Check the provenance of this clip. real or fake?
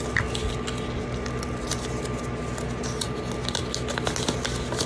real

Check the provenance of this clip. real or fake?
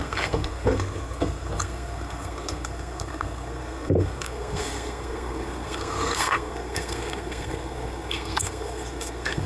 fake